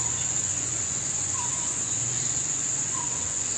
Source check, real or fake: fake